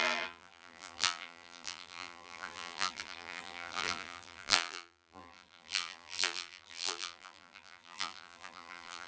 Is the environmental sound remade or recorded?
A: remade